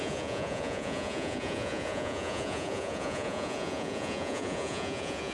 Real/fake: fake